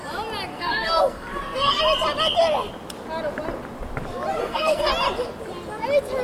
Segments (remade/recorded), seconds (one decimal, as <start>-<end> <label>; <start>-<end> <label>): 0.0-0.5 recorded; 0.5-1.8 remade; 1.8-4.4 recorded; 4.4-4.9 remade; 4.9-6.2 recorded